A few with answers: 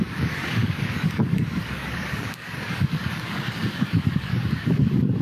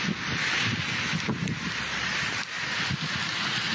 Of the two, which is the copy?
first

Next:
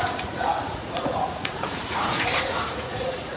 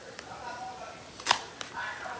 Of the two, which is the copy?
first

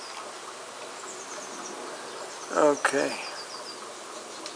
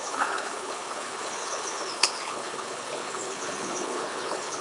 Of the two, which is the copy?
second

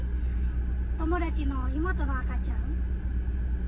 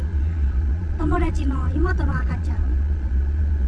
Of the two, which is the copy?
second